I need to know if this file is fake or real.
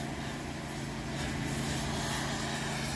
real